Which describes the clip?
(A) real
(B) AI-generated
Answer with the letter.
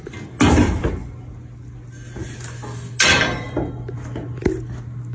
A